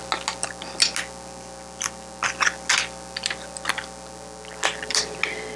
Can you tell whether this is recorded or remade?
recorded